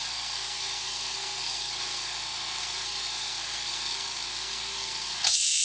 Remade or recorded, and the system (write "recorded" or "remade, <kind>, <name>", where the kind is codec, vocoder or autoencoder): remade, codec, SNAC